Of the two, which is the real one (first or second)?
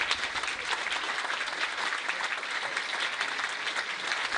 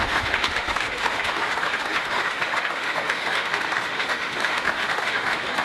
first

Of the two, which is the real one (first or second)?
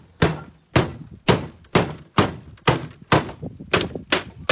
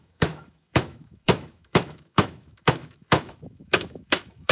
first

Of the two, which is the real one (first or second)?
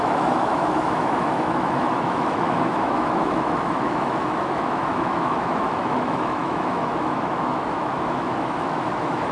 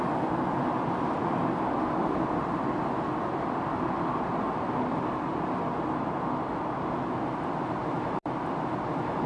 second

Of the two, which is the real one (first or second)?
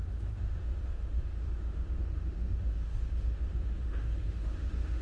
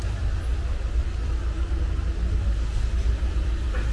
second